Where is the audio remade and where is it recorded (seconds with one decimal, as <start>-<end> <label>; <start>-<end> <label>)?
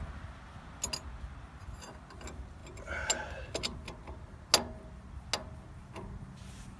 0.0-6.8 recorded